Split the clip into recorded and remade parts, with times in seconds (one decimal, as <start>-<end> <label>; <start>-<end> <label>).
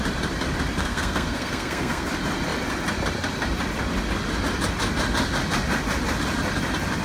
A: 0.0-0.8 recorded; 0.8-2.1 remade; 2.1-7.0 recorded